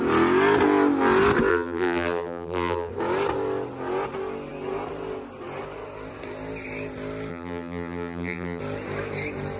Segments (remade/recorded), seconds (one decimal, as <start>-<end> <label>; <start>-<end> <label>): 0.0-1.5 recorded; 1.5-2.9 remade; 2.9-7.3 recorded; 7.3-8.6 remade; 8.6-9.6 recorded